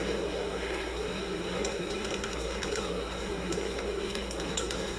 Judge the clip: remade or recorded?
remade